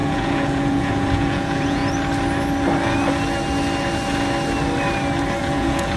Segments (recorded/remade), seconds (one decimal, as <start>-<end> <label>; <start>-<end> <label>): 0.0-1.8 remade; 1.8-5.4 recorded; 5.4-6.0 remade